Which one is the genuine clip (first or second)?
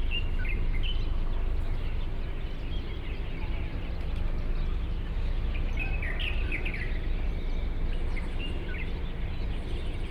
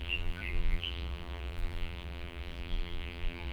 first